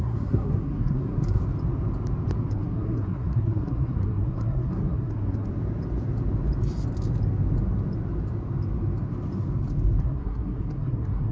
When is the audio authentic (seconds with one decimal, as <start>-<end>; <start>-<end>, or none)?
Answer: 1.4-2.5; 5.5-10.0